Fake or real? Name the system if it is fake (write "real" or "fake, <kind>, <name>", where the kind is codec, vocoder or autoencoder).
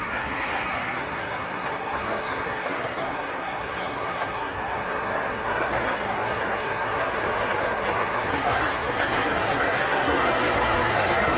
fake, codec, SNAC